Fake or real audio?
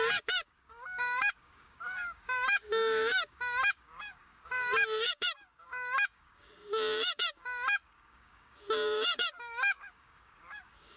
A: fake